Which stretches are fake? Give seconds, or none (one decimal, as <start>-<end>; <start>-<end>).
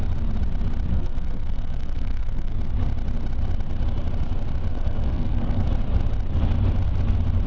0.9-2.5; 4.7-5.7